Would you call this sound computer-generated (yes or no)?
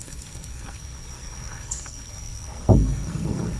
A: yes